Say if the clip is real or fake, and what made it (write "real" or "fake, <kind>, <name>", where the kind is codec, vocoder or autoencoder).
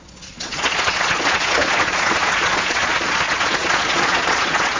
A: fake, vocoder, Vocos